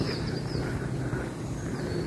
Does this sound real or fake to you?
real